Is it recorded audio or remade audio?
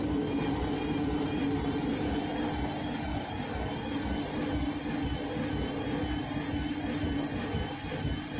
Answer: recorded